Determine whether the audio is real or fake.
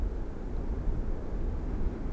real